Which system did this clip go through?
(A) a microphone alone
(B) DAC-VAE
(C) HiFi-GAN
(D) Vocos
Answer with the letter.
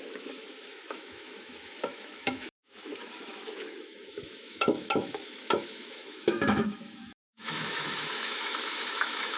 B